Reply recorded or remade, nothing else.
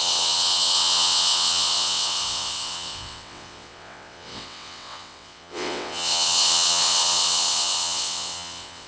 remade